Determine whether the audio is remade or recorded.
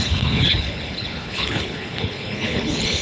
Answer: remade